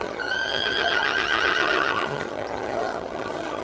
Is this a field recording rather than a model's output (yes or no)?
no